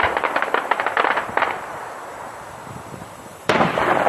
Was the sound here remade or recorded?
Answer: remade